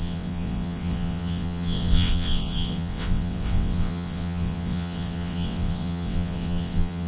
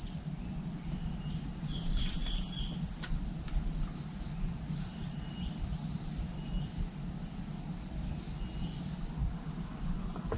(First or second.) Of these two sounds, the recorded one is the second